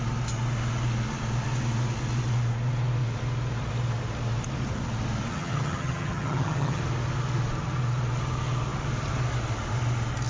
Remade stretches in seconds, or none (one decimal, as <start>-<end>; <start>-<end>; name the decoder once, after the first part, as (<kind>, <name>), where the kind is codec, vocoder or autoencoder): 5.3-6.8 (vocoder, HiFi-GAN)